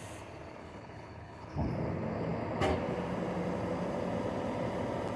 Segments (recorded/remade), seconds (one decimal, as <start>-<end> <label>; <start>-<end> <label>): 0.0-0.6 recorded; 0.6-1.7 remade; 1.7-5.2 recorded